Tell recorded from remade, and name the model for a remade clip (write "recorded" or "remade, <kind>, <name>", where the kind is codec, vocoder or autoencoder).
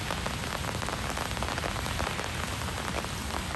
recorded